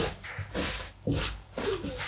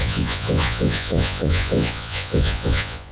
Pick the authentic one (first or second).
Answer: first